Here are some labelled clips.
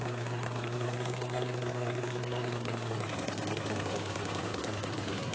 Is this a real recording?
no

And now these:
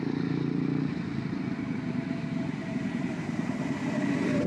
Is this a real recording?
yes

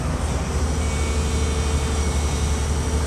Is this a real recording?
yes